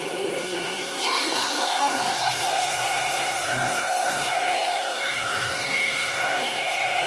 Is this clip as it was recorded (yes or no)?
no